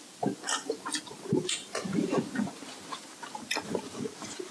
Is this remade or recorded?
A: recorded